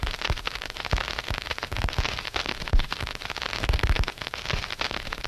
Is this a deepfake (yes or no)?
yes